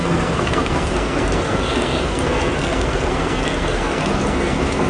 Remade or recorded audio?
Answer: remade